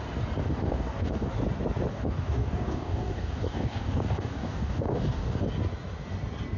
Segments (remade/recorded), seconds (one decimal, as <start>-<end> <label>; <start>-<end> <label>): 0.0-0.4 recorded; 0.4-1.3 remade; 1.3-1.9 recorded; 1.9-5.4 remade; 5.4-6.6 recorded